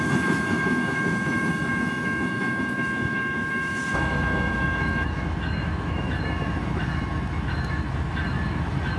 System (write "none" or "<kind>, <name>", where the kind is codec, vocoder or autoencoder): autoencoder, DAC-VAE